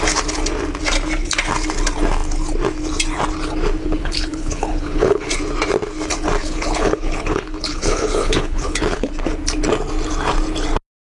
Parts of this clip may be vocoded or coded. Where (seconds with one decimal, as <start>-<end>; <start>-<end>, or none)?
3.8-5.3; 6.4-9.1